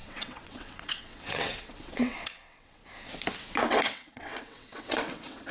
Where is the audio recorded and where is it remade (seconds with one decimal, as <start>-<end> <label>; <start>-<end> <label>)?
0.0-2.8 remade; 2.8-3.7 recorded; 3.7-5.5 remade